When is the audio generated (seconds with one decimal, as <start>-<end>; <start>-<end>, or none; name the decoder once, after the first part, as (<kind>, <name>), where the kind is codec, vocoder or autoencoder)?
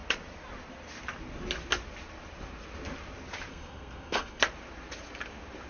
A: 3.5-4.4 (codec, SNAC)